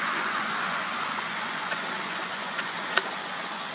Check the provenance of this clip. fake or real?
fake